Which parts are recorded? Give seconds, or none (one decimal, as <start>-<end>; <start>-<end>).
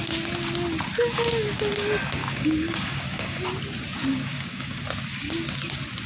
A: 0.0-2.2; 3.4-4.1; 4.8-6.1